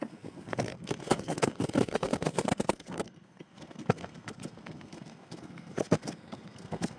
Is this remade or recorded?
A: remade